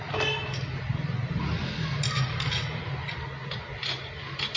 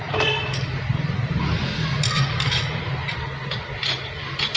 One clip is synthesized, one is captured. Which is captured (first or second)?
first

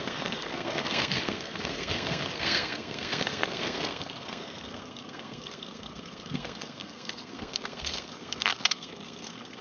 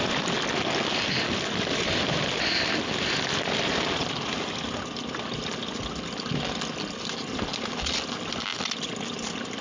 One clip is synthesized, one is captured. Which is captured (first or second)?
second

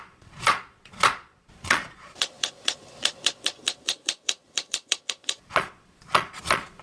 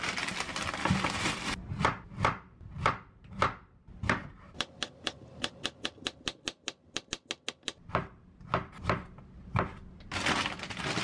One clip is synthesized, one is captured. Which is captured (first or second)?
second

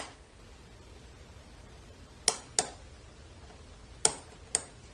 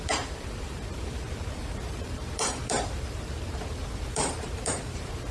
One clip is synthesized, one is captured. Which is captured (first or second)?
first